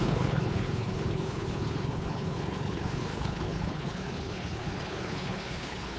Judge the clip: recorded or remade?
remade